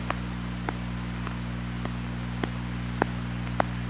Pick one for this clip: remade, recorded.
recorded